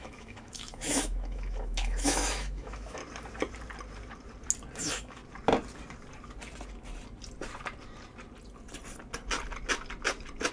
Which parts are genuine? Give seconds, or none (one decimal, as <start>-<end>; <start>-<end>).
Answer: 3.0-4.8; 5.2-10.5